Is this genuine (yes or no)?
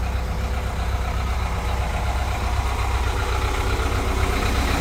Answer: yes